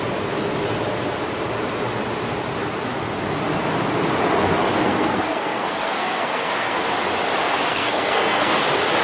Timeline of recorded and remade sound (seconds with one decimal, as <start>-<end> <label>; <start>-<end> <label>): 0.0-4.8 recorded; 4.8-6.8 remade; 6.8-7.7 recorded; 7.7-8.6 remade; 8.6-9.0 recorded